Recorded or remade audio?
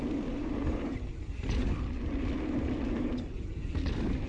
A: recorded